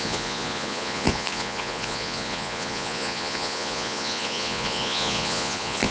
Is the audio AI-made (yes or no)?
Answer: yes